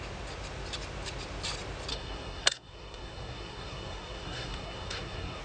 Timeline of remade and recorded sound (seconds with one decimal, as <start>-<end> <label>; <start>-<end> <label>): 0.0-1.9 recorded; 1.9-5.4 remade